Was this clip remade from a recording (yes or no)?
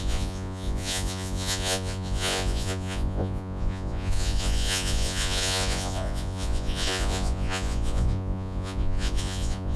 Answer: yes